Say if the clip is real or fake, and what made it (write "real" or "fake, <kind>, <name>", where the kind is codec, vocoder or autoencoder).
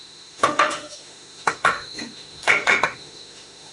fake, autoencoder, DAC-VAE